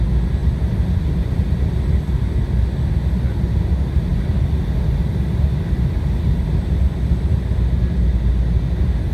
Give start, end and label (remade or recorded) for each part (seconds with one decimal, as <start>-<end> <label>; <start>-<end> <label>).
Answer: 0.0-0.4 recorded; 0.4-2.0 remade; 2.0-9.1 recorded

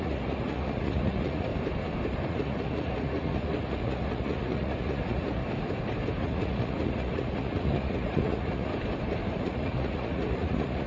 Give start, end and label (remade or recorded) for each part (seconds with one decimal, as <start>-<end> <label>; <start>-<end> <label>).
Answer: 0.0-1.5 remade; 1.5-2.3 recorded; 2.3-5.4 remade; 5.4-6.2 recorded; 6.2-8.7 remade; 8.7-9.3 recorded; 9.3-10.9 remade

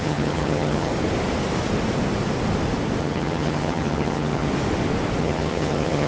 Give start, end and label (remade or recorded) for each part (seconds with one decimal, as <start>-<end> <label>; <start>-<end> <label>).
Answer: 0.0-0.9 remade; 0.9-3.0 recorded; 3.0-4.5 remade; 4.5-5.2 recorded; 5.2-6.1 remade

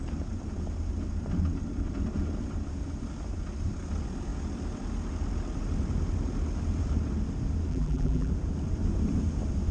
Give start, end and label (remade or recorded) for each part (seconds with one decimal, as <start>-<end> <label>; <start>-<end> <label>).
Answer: 0.0-7.7 recorded; 7.7-8.3 remade; 8.3-9.7 recorded

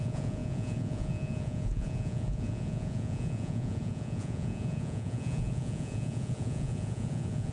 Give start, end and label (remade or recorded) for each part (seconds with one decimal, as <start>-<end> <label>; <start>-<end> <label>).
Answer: 0.0-7.5 remade

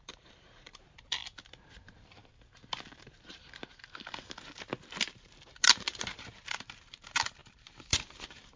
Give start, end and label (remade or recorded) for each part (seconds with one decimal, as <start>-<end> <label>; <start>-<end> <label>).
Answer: 0.0-1.2 remade; 1.2-1.7 recorded; 1.7-2.2 remade; 2.2-3.0 recorded; 3.0-3.4 remade; 3.4-5.1 recorded; 5.1-8.6 remade